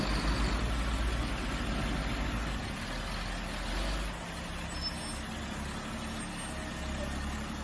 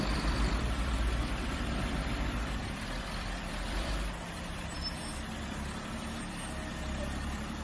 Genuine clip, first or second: first